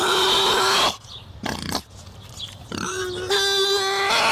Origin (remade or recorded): recorded